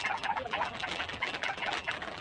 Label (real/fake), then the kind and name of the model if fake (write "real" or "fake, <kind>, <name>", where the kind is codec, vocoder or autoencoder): fake, vocoder, BigVGAN v2